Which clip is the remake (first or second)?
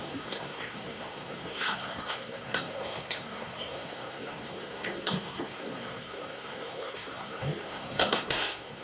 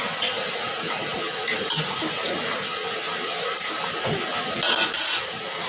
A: first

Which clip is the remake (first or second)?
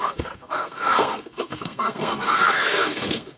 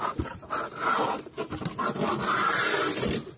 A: first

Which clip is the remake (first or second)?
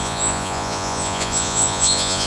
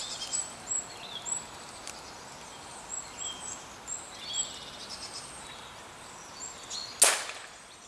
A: first